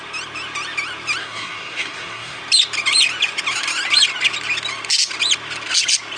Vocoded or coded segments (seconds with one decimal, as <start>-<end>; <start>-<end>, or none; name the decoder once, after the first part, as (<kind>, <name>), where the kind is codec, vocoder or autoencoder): 1.2-2.4 (codec, SNAC)

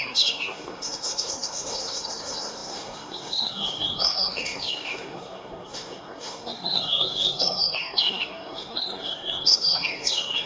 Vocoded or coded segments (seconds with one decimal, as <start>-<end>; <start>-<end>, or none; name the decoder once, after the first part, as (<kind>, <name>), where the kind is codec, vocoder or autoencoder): 0.0-10.5 (codec, SNAC)

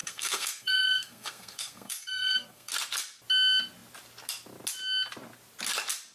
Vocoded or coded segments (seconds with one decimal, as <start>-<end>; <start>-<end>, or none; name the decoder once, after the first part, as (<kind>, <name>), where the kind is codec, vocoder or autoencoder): 0.0-2.7 (codec, SNAC)